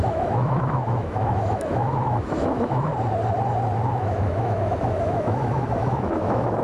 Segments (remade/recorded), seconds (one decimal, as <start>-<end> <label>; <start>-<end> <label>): 0.0-2.9 remade; 2.9-3.9 recorded; 3.9-6.6 remade

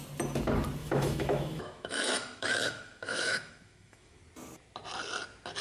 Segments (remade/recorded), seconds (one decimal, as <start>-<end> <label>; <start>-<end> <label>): 0.0-0.8 recorded; 0.8-4.2 remade; 4.2-5.6 recorded